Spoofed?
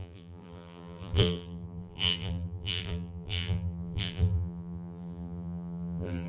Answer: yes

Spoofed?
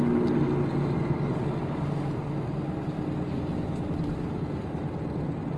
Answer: no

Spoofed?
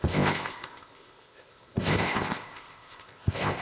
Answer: yes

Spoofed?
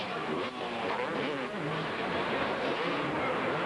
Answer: yes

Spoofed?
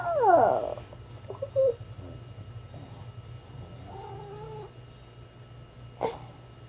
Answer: no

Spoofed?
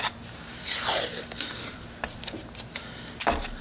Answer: no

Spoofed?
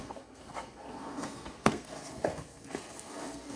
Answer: yes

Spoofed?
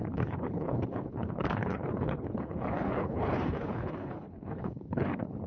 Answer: yes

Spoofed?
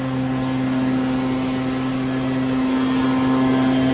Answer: no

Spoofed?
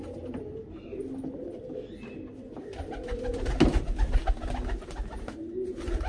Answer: no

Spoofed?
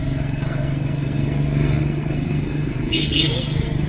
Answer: yes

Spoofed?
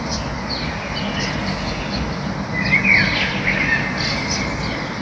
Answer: no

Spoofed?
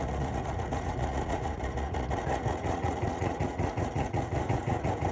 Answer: yes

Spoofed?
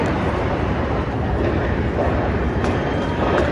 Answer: yes